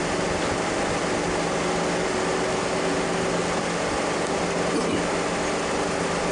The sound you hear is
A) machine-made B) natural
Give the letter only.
B